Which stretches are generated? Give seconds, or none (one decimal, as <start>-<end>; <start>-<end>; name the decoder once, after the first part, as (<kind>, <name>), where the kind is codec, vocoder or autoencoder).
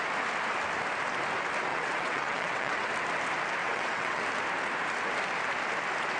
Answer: 1.7-2.9 (vocoder, WaveNeXt); 3.6-4.2